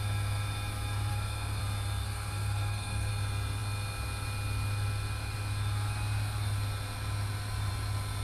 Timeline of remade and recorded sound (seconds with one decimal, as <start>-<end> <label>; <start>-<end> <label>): 0.0-1.1 recorded; 1.1-1.6 remade; 1.6-2.0 recorded; 2.0-3.1 remade; 3.1-8.2 recorded